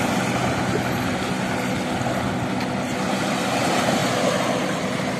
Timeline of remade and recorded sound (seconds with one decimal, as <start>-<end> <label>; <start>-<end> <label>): 0.0-5.2 recorded